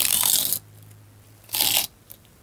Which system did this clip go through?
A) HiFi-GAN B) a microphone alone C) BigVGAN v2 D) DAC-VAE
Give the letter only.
B